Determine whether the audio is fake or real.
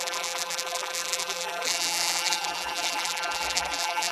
fake